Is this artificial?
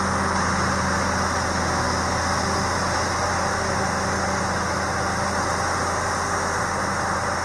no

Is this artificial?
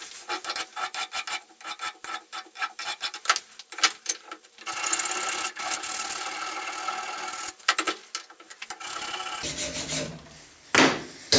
no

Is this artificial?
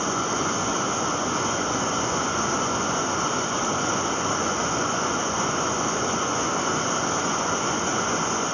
yes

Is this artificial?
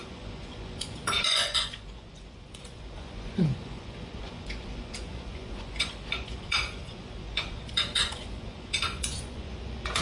yes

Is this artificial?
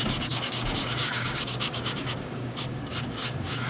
yes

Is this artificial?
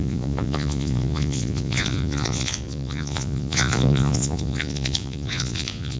yes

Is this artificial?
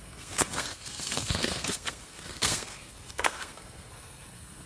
yes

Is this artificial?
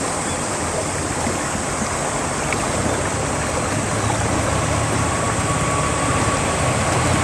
yes